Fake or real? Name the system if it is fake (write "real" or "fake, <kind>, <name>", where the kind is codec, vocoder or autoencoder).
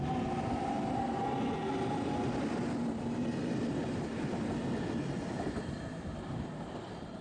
real